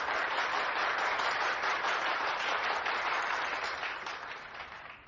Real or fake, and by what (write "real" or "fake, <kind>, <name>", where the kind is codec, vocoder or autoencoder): fake, vocoder, BigVGAN v2